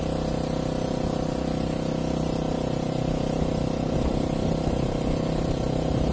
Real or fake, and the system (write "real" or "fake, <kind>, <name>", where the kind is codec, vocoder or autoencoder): real